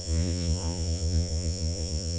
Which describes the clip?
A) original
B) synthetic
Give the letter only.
B